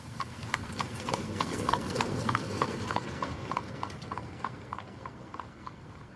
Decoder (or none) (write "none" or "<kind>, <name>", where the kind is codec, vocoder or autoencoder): codec, SNAC